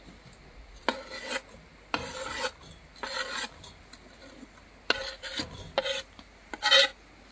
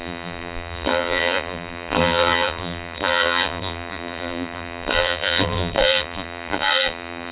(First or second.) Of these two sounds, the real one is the first